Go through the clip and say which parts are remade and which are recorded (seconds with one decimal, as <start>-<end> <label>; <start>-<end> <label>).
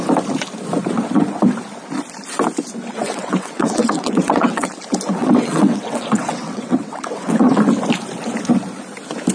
0.0-2.9 recorded; 2.9-4.7 remade; 4.7-5.2 recorded; 5.2-7.6 remade; 7.6-9.3 recorded